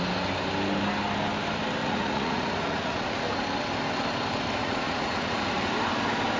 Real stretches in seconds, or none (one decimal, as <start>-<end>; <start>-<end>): 0.0-1.8; 3.4-4.6; 5.7-6.4